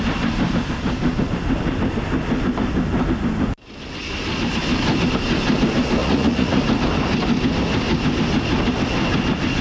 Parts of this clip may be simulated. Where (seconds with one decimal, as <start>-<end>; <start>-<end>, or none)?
6.0-6.6